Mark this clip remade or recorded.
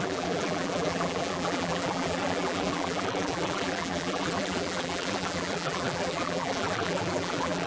remade